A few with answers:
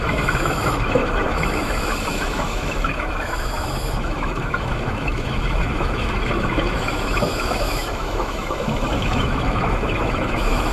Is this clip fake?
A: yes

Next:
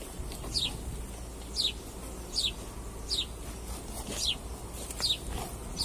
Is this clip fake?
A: no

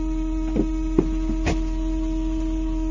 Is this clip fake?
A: no